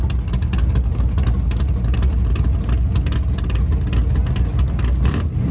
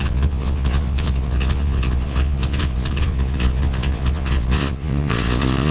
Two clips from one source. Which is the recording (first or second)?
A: first